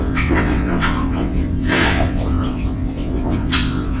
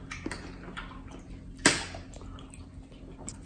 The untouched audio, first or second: second